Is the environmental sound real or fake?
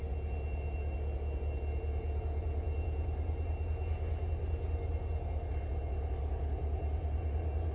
real